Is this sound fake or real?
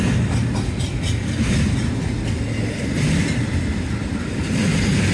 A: real